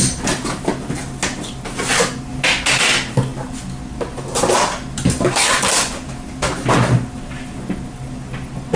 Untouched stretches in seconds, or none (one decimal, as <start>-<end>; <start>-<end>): 0.0-8.8